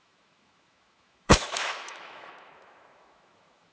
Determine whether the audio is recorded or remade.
remade